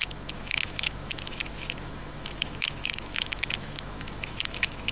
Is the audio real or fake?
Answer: fake